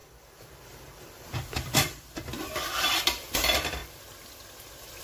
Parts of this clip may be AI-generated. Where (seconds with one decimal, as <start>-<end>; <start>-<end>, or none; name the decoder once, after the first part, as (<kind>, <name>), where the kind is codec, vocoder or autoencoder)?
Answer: 0.0-3.8 (vocoder, BigVGAN v2)